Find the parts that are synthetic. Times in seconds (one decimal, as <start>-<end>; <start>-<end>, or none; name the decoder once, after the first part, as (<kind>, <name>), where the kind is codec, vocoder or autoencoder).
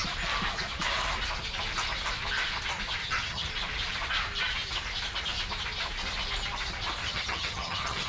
3.0-3.5 (vocoder, HiFi-GAN); 7.0-8.1